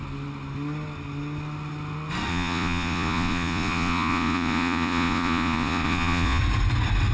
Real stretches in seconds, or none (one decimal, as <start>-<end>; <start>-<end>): 0.0-2.3; 6.4-7.1